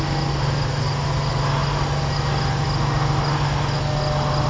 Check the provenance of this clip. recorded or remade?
recorded